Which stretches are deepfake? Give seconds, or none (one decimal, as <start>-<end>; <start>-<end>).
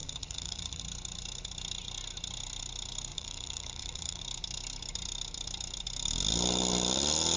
0.0-0.8; 3.1-4.2